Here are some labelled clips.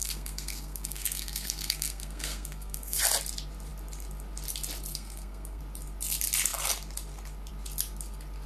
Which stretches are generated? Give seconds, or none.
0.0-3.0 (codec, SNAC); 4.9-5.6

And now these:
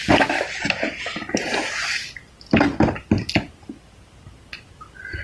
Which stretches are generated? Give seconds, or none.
none